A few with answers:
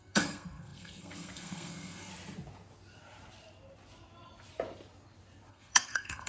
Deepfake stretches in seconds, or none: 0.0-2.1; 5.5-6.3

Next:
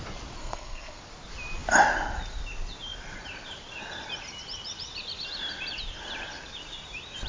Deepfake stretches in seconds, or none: 0.4-1.0

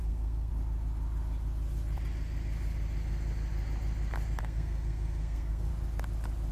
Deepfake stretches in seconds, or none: 0.0-0.5; 4.4-5.7

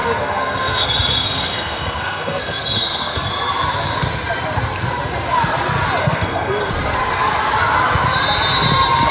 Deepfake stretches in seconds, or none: 0.0-3.3; 6.0-6.7